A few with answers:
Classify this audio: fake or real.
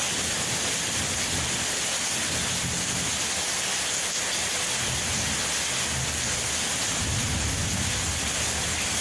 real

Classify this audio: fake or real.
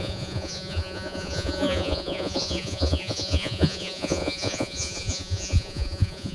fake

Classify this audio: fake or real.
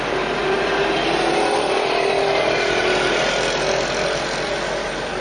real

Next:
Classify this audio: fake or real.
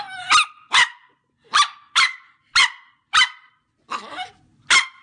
real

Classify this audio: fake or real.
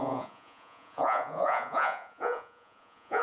fake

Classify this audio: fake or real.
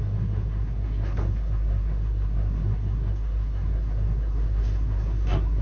fake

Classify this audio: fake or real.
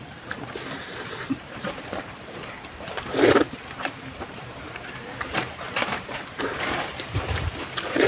fake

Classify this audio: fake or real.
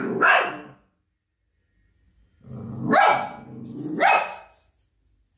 real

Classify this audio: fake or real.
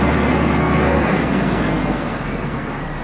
fake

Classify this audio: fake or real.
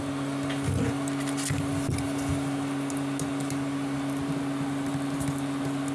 real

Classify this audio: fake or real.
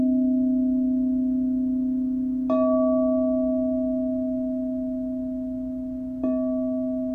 real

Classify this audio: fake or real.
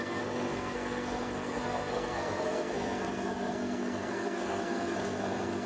fake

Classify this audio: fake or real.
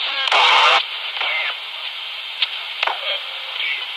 real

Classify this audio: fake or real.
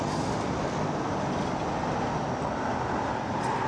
real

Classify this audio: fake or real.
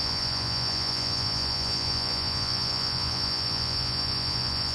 fake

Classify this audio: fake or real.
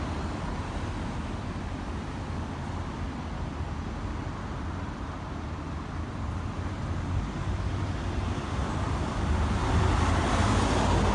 real